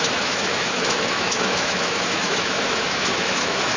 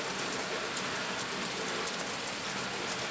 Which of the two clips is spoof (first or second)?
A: first